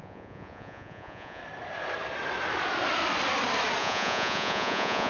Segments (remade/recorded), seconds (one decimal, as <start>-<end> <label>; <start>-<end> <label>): 0.0-1.4 remade; 1.4-3.8 recorded; 3.8-5.1 remade